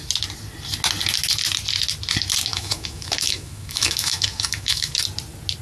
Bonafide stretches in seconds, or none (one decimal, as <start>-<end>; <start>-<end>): 0.0-2.5; 5.0-5.6